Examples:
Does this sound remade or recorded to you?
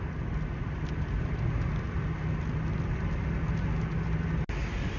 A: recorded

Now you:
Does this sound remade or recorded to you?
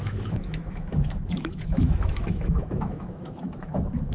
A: remade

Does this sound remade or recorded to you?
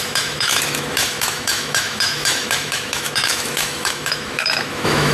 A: remade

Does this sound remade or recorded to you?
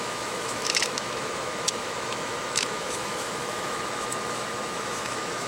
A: remade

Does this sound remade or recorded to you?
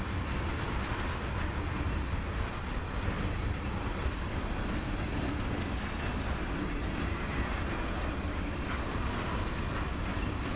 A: recorded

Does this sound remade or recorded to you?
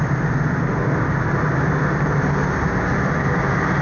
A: recorded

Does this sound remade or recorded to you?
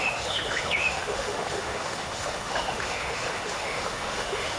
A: remade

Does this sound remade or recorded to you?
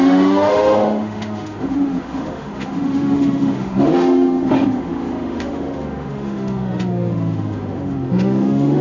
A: remade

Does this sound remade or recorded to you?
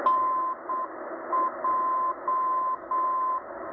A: recorded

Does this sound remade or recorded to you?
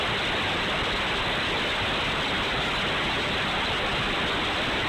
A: recorded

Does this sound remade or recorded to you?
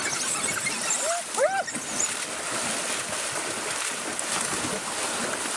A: recorded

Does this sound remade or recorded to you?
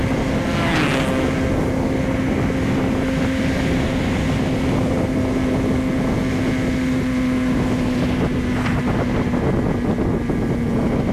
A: recorded